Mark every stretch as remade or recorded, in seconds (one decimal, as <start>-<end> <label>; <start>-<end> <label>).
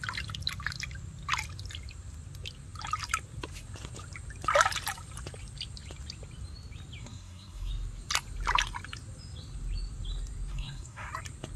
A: 0.0-7.0 recorded; 7.0-7.7 remade; 7.7-10.5 recorded; 10.5-11.1 remade; 11.1-11.6 recorded